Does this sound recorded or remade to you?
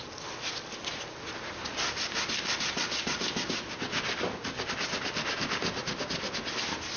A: recorded